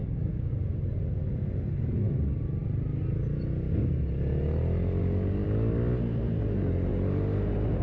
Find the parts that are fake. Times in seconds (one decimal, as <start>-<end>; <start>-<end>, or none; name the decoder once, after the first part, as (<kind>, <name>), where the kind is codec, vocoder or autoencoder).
0.0-0.5 (codec, DAC)